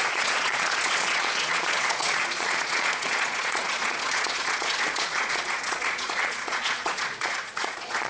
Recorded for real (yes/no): no